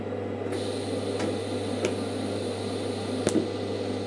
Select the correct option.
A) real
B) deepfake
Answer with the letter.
A